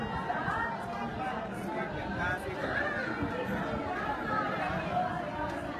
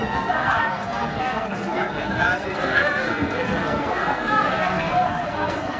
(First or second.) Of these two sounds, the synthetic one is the second